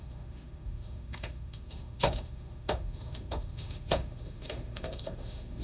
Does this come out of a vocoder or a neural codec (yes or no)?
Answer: yes